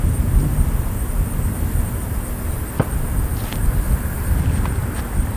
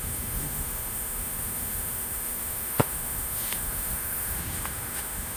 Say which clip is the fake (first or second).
second